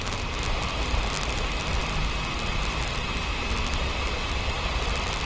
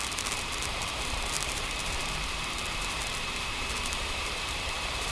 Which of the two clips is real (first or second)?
first